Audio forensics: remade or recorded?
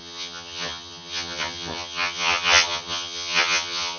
remade